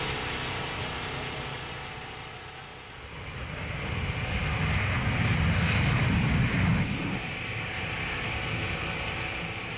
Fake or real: real